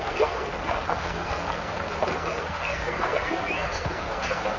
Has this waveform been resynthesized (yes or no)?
yes